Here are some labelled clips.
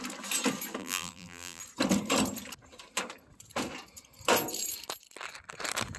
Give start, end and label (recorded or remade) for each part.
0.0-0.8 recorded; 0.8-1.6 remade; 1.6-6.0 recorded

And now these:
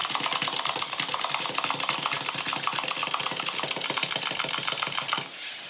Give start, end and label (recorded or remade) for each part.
0.0-5.7 recorded

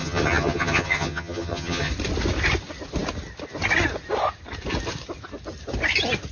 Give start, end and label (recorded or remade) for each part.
0.0-1.9 remade; 1.9-6.3 recorded

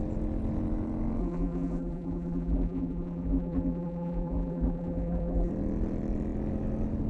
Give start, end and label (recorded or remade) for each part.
0.0-1.2 recorded; 1.2-5.5 remade; 5.5-7.1 recorded

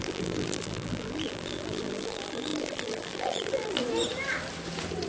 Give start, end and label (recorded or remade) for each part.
0.0-3.8 remade; 3.8-5.1 recorded

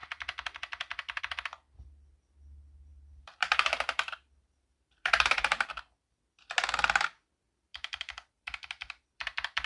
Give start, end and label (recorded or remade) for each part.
0.0-2.9 recorded; 2.9-5.7 remade; 5.7-7.7 recorded; 7.7-9.7 remade

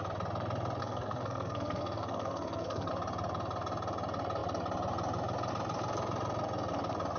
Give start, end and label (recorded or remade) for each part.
0.0-0.8 recorded; 0.8-2.9 remade; 2.9-7.2 recorded